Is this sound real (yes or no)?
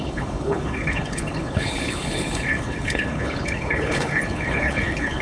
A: no